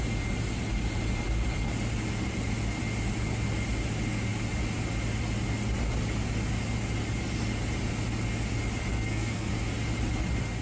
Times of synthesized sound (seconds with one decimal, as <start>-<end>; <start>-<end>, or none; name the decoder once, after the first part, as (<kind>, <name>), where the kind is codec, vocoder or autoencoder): 8.9-9.5 (codec, SNAC)